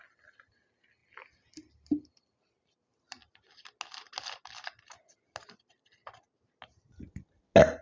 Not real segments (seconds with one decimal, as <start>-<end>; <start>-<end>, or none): none